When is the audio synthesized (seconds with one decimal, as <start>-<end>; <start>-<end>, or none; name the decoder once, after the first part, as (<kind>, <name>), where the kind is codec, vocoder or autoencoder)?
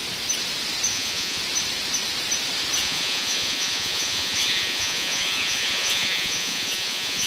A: 0.9-1.4 (vocoder, Vocos); 2.8-7.3